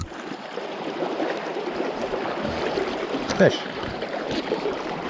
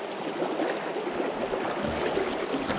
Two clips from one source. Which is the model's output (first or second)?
first